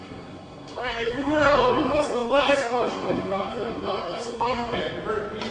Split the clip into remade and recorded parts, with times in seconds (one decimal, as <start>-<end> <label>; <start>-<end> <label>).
0.0-4.8 remade; 4.8-5.5 recorded